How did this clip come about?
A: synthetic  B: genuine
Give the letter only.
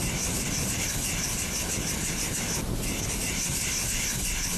B